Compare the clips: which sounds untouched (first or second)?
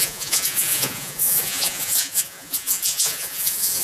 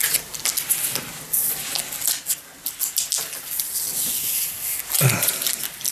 second